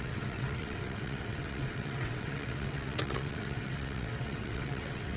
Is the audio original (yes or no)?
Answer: no